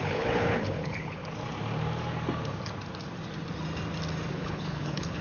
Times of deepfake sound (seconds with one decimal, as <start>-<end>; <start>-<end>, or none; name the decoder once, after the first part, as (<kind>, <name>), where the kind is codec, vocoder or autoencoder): 0.0-1.2 (codec, HILCodec); 4.3-5.2